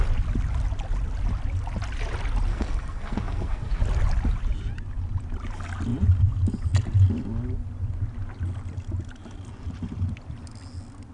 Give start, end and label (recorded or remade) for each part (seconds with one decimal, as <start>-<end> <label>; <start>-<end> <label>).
0.0-2.5 recorded; 2.5-3.8 remade; 3.8-11.1 recorded